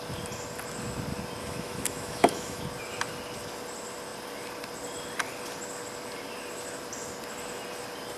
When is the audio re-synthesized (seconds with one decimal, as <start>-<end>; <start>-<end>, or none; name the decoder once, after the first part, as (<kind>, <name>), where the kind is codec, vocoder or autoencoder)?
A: 1.4-2.6 (autoencoder, DAC-VAE)